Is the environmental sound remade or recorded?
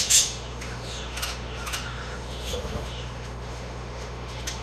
remade